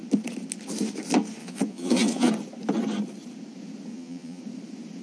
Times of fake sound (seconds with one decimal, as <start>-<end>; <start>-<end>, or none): 1.4-2.3; 3.9-4.4